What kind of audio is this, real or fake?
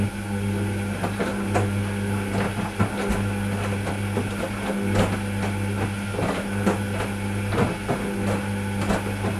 real